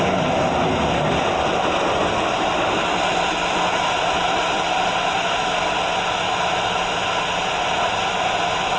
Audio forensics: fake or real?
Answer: real